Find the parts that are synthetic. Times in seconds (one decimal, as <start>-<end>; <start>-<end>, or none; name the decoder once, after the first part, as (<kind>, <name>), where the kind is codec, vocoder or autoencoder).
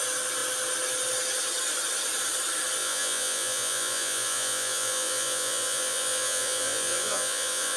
2.8-7.8 (vocoder, Vocos)